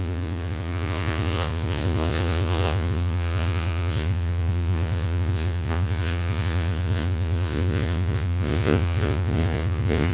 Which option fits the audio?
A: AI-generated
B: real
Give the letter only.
A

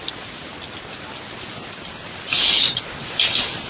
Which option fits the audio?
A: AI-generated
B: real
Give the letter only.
B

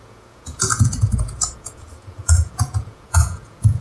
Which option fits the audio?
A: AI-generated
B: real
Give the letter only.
A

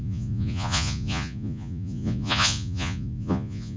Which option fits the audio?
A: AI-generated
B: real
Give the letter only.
A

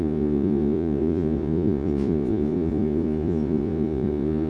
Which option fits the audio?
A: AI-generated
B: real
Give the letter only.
A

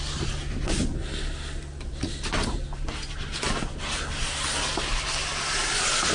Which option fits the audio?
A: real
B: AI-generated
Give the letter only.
A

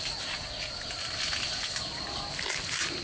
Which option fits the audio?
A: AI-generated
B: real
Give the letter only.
B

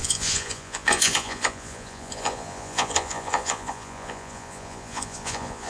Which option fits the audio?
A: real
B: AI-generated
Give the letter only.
B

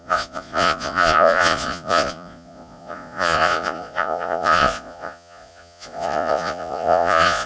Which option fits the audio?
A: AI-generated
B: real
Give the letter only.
A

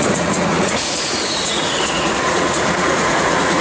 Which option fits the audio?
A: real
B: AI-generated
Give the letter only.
B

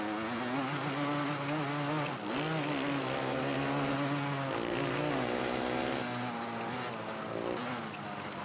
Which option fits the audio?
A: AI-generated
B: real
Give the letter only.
B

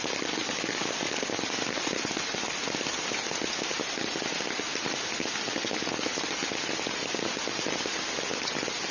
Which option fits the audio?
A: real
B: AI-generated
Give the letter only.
A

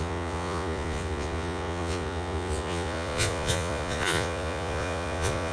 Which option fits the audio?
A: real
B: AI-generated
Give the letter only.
B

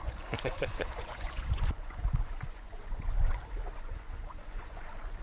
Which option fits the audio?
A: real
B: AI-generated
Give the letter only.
B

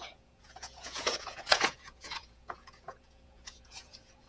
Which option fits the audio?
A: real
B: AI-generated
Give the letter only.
B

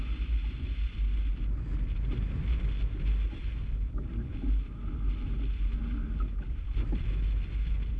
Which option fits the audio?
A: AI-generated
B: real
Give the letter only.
B